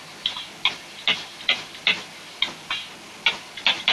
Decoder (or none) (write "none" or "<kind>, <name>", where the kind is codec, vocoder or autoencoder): none